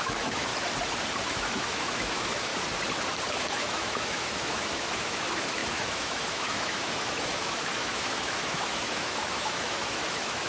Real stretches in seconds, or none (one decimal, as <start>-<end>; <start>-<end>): 0.5-1.2; 2.5-3.3